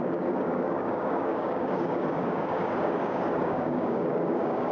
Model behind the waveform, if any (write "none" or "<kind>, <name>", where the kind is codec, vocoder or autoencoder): codec, DAC